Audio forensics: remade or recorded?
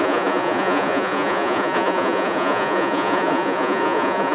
remade